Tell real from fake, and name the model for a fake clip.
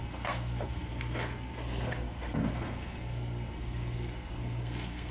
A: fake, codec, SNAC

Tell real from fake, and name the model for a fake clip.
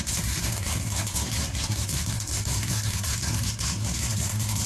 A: fake, codec, SNAC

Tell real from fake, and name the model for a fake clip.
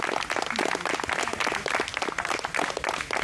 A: real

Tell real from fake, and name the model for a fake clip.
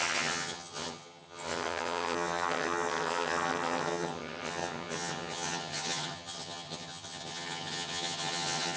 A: fake, vocoder, HiFi-GAN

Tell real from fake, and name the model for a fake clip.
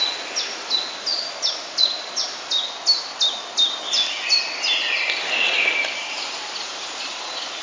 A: real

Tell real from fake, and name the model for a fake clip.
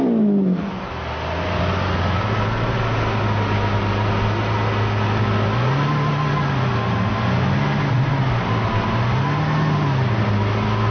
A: real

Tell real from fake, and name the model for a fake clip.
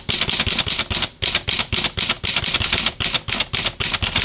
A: real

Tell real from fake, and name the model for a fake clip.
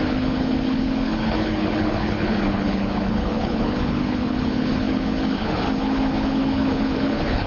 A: fake, codec, HILCodec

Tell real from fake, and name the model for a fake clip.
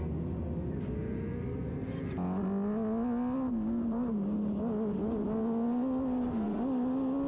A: real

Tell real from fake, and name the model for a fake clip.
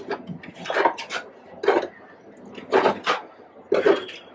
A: real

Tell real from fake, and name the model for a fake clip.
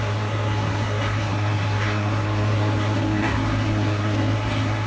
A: fake, codec, SNAC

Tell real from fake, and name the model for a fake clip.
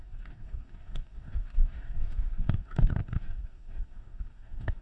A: fake, codec, DAC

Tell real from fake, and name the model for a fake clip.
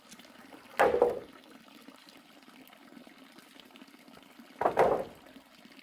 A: real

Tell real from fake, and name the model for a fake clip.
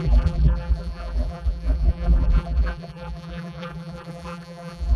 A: fake, vocoder, BigVGAN v2